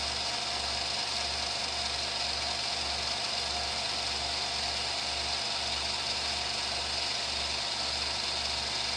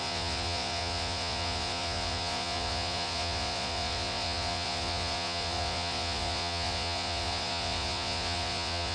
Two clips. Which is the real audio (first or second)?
first